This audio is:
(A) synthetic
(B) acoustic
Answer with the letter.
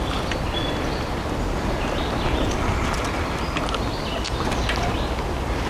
B